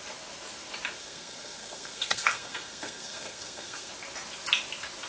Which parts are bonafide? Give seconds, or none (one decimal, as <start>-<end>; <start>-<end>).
0.0-1.0; 3.9-5.1